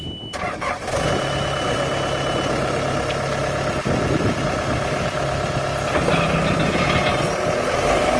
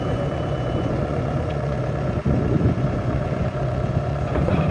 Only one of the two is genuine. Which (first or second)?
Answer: first